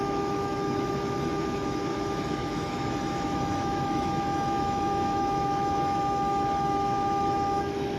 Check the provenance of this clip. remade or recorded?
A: remade